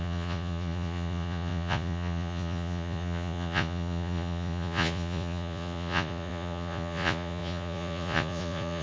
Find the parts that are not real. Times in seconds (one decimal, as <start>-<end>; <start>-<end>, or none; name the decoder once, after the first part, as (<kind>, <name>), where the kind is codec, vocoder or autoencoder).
0.0-8.8 (vocoder, Vocos)